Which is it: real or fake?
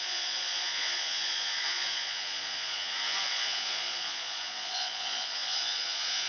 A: fake